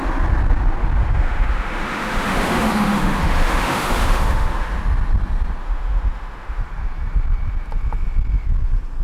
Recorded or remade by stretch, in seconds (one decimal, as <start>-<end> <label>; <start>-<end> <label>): 0.0-1.0 recorded; 1.0-4.8 remade; 4.8-5.6 recorded; 5.6-6.6 remade; 6.6-9.0 recorded